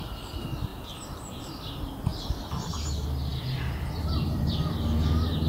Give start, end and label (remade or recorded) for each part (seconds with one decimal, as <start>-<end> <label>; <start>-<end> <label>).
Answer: 0.0-0.7 recorded; 0.7-1.6 remade; 1.6-3.3 recorded; 3.3-4.6 remade; 4.6-5.5 recorded